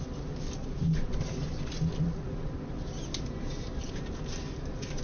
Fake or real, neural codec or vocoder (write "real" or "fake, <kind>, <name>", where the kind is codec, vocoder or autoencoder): real